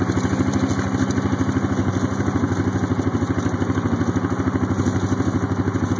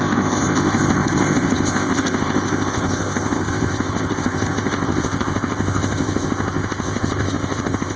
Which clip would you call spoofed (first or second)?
second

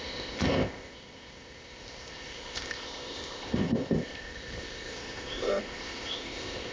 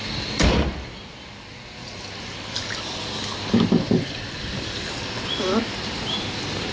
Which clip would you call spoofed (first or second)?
first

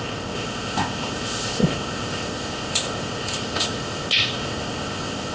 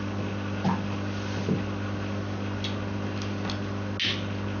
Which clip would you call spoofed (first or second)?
first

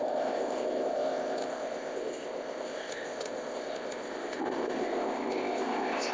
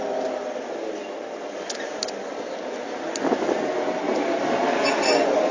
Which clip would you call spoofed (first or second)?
first